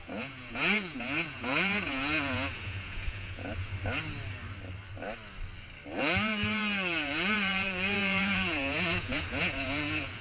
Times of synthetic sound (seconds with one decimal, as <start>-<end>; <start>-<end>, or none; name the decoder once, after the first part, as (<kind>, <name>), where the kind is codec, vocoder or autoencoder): 0.0-3.7 (vocoder, Vocos); 6.0-10.2